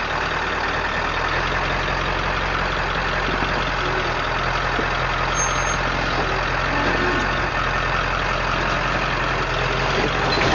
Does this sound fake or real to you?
real